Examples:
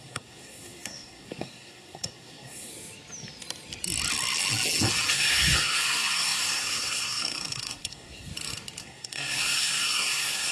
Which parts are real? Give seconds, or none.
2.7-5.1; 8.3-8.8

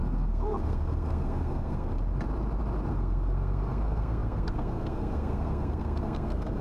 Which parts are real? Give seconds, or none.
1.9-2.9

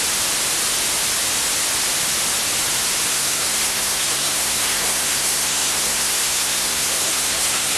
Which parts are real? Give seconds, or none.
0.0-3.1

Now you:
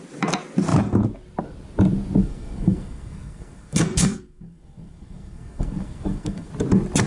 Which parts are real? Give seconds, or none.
0.0-2.2; 6.5-7.1

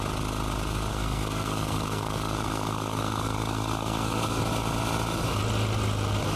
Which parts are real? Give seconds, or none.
0.0-0.9; 4.4-6.4